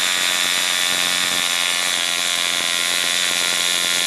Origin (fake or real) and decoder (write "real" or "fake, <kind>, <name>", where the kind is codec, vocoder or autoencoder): real